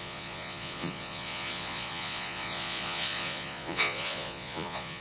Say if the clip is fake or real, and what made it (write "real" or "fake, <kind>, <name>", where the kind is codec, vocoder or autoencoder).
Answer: fake, vocoder, Vocos